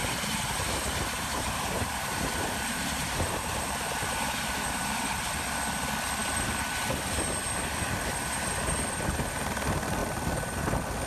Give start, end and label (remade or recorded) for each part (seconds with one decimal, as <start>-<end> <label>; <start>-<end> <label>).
0.0-5.0 remade; 5.0-11.1 recorded